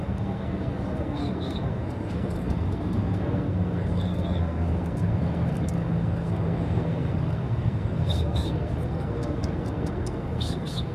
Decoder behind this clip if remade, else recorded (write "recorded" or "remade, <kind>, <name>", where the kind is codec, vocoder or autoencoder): remade, codec, SNAC